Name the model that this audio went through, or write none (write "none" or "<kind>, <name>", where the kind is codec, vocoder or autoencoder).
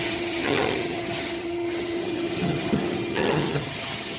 vocoder, HiFi-GAN